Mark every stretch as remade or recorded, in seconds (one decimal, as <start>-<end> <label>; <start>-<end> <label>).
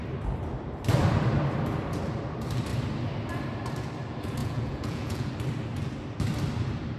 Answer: 0.0-4.4 recorded; 4.4-5.3 remade; 5.3-7.0 recorded